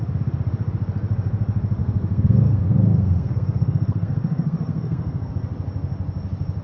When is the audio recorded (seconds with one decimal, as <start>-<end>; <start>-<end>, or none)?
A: 0.0-1.8; 5.3-6.6